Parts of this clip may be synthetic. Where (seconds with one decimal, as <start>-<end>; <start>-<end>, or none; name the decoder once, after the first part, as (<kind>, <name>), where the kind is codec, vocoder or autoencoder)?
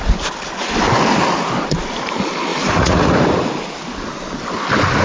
2.5-3.1 (vocoder, Vocos)